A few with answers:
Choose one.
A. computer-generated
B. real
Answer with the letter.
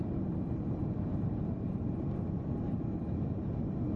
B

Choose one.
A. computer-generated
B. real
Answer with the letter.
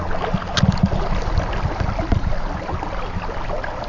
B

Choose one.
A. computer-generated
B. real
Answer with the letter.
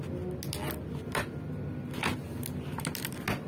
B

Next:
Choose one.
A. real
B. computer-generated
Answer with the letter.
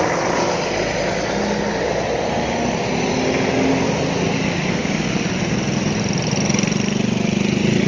A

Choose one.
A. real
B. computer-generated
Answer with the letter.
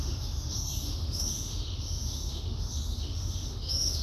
B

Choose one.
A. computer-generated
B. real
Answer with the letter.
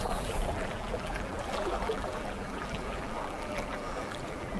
A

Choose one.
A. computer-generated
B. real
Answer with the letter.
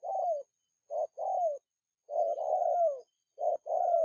B